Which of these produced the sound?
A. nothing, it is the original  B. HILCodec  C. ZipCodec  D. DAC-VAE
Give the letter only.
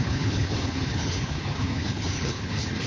B